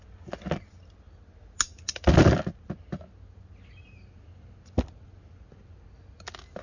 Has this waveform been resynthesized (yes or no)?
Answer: no